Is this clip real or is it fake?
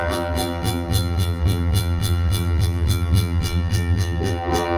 fake